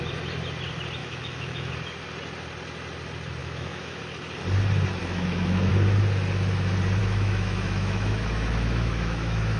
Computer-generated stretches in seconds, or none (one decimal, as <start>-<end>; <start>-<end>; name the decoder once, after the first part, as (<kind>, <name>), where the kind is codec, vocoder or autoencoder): 1.0-1.7 (autoencoder, DAC-VAE); 3.4-4.0; 5.0-5.7; 7.0-9.6